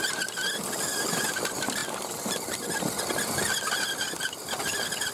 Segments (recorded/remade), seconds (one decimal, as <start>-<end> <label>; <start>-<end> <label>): 0.0-5.1 recorded